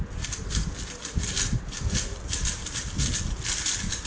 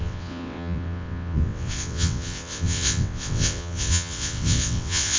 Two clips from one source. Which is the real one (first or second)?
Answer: first